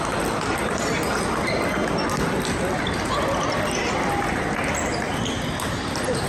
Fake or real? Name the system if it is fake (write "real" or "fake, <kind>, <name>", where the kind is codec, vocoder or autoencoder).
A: real